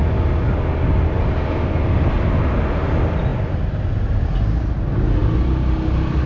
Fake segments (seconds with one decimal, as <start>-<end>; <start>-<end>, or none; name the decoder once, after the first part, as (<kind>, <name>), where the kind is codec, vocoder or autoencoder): none